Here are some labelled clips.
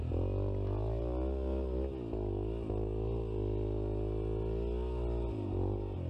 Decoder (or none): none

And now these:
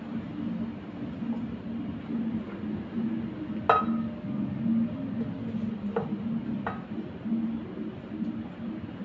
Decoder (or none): none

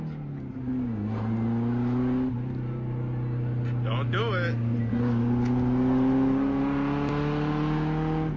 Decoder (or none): none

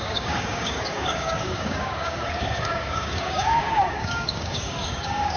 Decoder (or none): codec, DAC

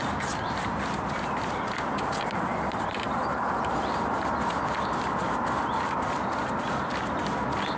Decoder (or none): none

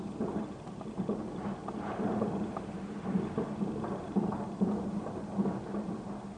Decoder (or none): vocoder, BigVGAN v2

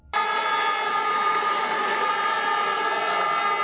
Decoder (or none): none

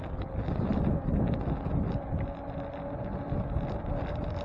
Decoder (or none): none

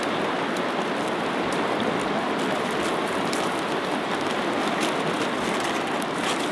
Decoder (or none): none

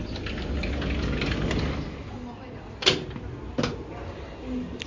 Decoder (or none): none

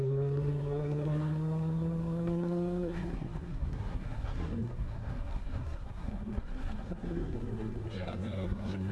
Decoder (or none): codec, SNAC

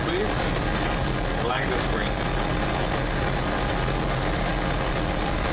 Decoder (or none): none